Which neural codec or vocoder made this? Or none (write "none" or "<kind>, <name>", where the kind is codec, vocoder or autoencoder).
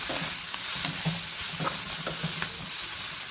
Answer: none